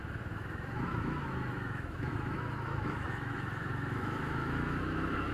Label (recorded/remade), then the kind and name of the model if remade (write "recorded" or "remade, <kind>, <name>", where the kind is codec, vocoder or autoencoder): remade, autoencoder, DAC-VAE